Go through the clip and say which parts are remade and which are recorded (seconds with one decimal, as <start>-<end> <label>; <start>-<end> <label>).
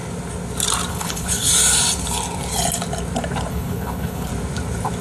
0.0-0.9 recorded; 0.9-1.5 remade; 1.5-3.5 recorded; 3.5-4.3 remade; 4.3-5.0 recorded